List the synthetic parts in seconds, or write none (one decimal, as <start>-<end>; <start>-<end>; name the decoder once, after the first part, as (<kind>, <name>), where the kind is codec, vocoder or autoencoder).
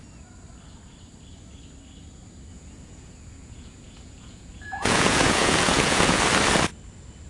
2.5-6.2 (vocoder, Vocos)